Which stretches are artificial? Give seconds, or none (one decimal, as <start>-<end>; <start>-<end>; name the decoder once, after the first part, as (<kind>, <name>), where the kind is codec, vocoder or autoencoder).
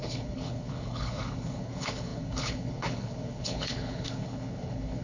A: 0.0-5.0 (codec, HILCodec)